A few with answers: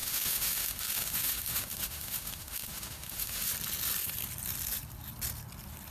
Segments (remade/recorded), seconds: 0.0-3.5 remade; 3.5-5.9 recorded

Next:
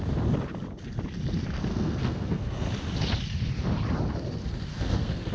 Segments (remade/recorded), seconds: 0.0-1.7 recorded; 1.7-2.7 remade; 2.7-4.7 recorded; 4.7-5.3 remade

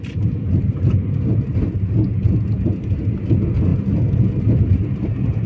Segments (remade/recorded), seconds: 0.0-5.5 recorded